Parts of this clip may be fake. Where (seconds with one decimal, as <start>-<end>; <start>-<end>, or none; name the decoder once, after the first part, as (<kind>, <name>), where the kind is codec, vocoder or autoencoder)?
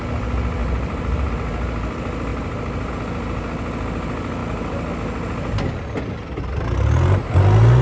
0.6-1.3 (vocoder, BigVGAN v2); 2.3-2.9